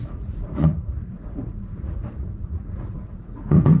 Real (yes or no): no